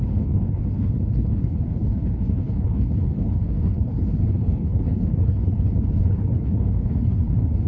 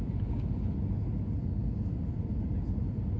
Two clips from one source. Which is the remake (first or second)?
first